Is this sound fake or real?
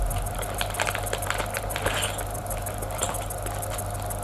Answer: real